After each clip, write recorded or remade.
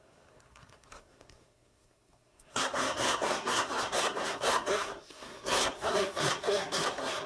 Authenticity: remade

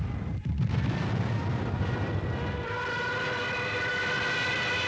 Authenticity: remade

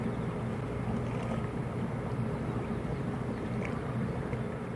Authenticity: recorded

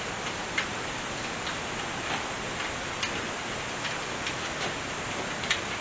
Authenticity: recorded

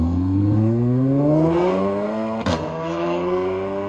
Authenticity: remade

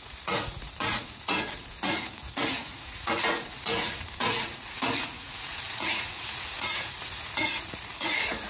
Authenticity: remade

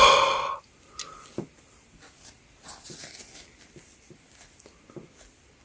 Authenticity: recorded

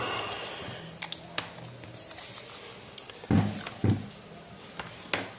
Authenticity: recorded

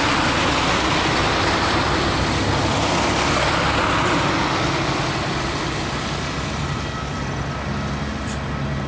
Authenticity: recorded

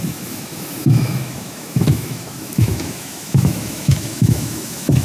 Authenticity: remade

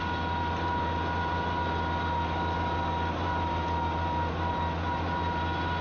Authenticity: recorded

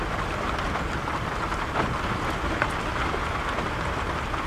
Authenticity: recorded